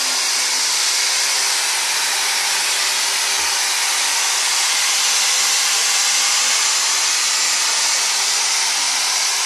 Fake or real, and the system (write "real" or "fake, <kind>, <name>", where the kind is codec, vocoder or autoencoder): real